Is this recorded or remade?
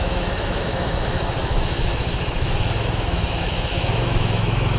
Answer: remade